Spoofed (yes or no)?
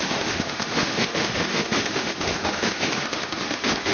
yes